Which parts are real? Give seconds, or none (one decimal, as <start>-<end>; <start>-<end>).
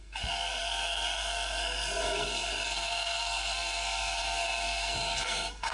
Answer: none